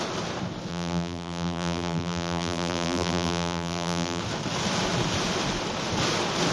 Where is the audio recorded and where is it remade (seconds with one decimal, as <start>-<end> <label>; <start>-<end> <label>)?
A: 0.0-0.7 recorded; 0.7-4.2 remade; 4.2-6.5 recorded